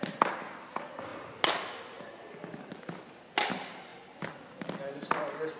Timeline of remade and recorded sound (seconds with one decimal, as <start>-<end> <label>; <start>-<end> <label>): 0.0-5.6 recorded